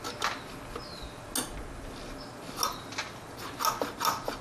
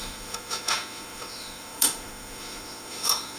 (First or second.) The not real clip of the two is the second